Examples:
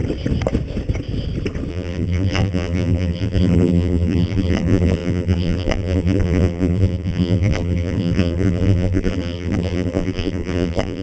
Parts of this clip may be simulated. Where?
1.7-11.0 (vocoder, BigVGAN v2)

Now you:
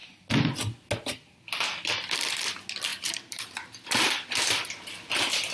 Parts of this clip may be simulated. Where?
2.9-4.1 (vocoder, BigVGAN v2)

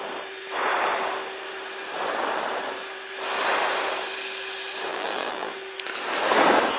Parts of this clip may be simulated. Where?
4.9-5.5 (vocoder, BigVGAN v2)

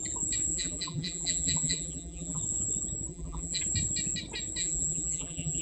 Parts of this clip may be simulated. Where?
0.5-2.4 (vocoder, BigVGAN v2); 3.1-3.6; 4.6-5.6